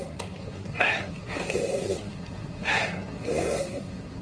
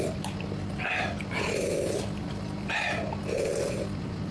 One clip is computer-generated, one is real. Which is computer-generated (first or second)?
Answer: first